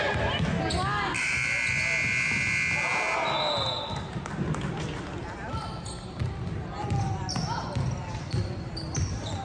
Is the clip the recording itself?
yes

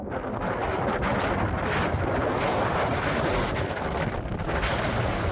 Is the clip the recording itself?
yes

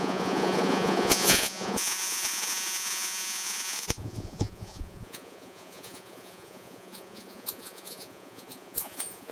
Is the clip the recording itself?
no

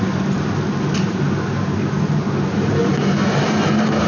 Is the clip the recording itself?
yes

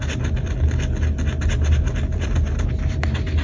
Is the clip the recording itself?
yes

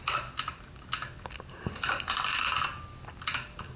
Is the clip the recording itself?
yes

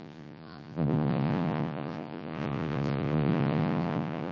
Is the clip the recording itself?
no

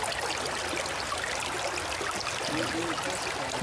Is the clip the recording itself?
yes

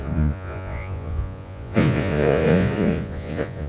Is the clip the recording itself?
no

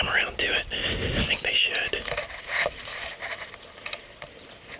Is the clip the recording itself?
yes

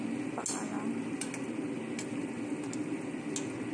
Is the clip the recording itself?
yes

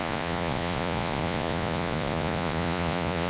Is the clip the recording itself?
no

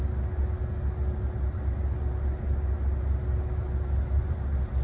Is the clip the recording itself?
yes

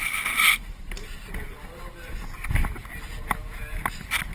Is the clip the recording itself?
yes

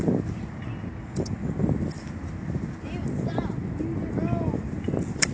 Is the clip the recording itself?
yes